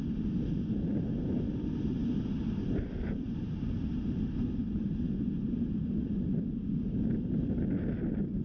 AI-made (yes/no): no